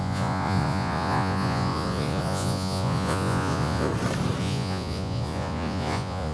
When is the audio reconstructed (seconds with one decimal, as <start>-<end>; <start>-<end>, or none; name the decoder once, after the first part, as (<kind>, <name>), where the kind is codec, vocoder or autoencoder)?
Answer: 0.0-3.9 (vocoder, Vocos); 4.4-6.3